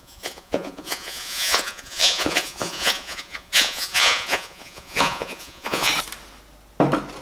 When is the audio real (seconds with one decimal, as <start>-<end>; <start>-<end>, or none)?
5.9-7.2